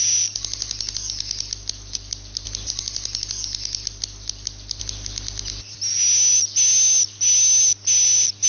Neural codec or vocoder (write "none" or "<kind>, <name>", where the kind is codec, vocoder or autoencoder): none